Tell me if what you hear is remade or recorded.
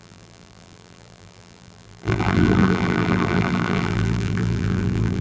remade